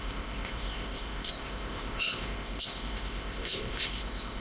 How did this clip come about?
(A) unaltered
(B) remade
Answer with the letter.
B